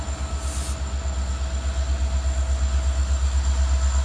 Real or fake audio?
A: real